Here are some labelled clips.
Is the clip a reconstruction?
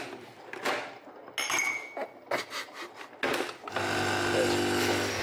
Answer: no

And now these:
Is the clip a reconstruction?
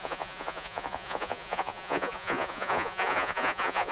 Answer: yes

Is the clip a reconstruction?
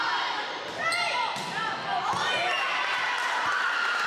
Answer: no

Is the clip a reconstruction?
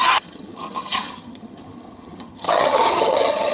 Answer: yes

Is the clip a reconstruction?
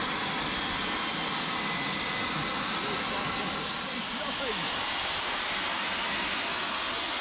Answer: no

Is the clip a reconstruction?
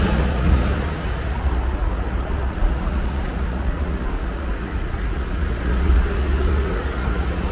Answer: yes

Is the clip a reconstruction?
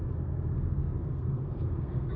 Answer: yes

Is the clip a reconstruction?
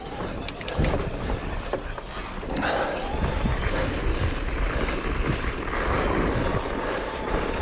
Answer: no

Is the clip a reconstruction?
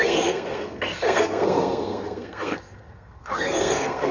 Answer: yes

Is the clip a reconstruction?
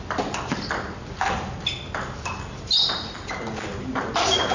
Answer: no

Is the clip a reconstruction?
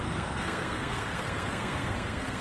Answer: yes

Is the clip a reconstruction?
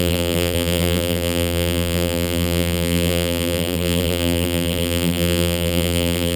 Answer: yes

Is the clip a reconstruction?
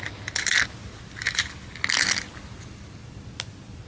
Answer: no